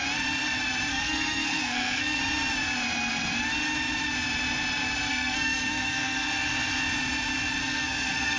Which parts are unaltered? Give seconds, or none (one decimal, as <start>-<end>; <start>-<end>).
0.0-0.9; 2.2-5.1; 6.3-7.6